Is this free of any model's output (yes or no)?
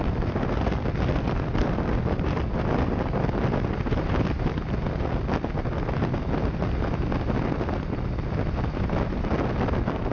yes